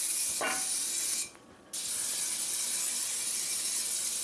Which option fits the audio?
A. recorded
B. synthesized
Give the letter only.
A